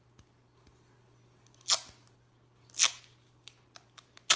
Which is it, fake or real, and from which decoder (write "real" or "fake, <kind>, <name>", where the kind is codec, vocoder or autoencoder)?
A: real